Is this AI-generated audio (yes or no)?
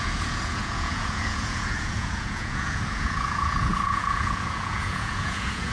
yes